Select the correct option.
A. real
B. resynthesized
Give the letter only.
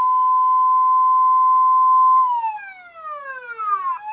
A